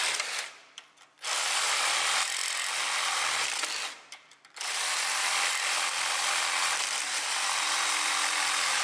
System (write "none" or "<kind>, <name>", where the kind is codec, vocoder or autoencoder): vocoder, BigVGAN v2